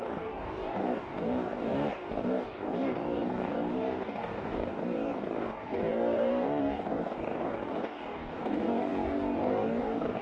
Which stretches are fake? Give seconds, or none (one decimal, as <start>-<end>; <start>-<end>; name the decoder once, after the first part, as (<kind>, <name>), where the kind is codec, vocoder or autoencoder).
0.0-10.2 (codec, DAC)